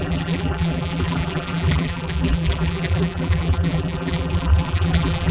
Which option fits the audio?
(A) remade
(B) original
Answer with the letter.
A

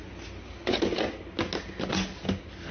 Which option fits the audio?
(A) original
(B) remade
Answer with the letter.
A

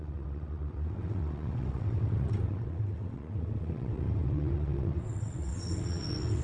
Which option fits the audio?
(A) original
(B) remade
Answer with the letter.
B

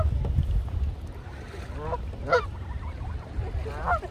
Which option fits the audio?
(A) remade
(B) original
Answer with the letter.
B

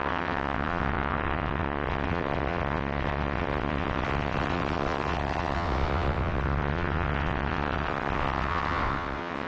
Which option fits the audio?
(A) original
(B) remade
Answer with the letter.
B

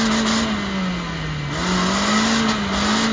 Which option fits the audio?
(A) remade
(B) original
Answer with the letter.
B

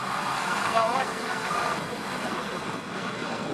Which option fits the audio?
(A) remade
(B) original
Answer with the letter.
A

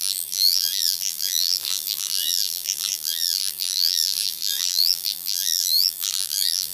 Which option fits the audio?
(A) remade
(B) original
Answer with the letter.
A